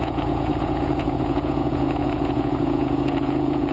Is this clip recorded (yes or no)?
no